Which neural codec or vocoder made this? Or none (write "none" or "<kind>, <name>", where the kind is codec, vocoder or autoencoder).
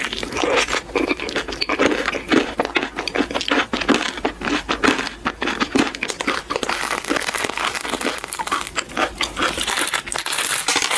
none